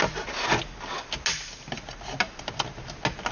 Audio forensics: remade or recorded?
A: recorded